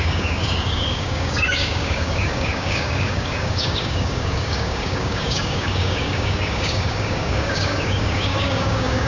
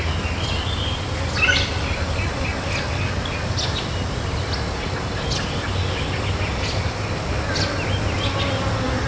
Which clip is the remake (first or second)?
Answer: first